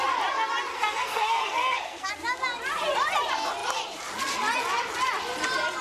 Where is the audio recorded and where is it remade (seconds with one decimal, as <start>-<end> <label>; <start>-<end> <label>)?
0.0-0.7 recorded; 0.7-2.1 remade; 2.1-5.8 recorded